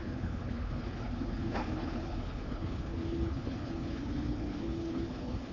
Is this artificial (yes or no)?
yes